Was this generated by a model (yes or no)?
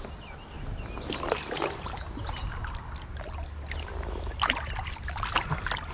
no